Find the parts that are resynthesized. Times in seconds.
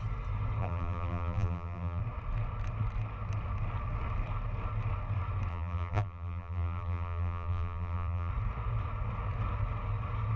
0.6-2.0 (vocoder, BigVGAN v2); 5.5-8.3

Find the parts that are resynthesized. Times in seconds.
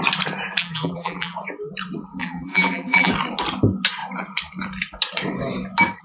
0.6-1.4 (vocoder, BigVGAN v2); 2.2-3.1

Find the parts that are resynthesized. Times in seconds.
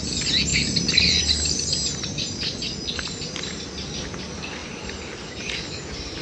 0.5-1.2 (vocoder, BigVGAN v2); 4.6-5.4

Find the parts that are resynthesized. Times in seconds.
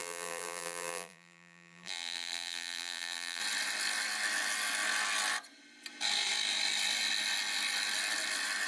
0.0-3.4 (vocoder, BigVGAN v2)